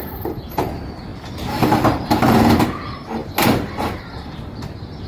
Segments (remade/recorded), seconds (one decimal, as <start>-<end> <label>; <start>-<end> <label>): 0.0-5.1 remade